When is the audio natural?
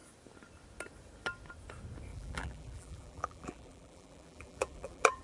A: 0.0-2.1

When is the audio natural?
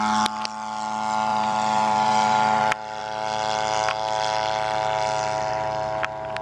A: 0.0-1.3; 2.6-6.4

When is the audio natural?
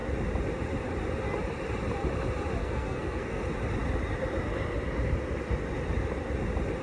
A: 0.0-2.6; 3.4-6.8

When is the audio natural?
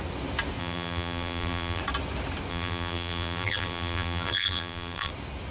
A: 0.0-0.6; 1.8-2.5; 5.1-5.5